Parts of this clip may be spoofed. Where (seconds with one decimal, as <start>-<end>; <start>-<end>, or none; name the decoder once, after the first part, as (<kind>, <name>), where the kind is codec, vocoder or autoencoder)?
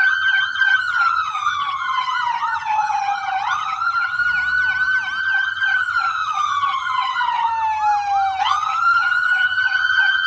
0.0-4.2 (vocoder, HiFi-GAN); 5.2-7.5; 8.4-10.3